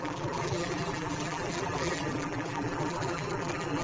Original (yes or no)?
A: no